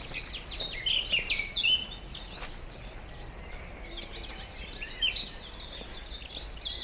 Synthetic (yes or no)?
no